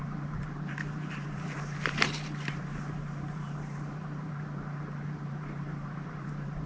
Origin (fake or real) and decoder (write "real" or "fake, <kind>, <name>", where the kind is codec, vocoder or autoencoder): fake, vocoder, BigVGAN v2